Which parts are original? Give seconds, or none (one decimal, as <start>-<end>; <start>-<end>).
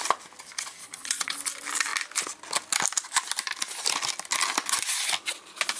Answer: 0.0-0.8; 1.4-5.8